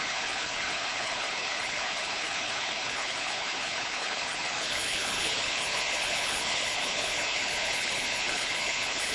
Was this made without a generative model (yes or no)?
no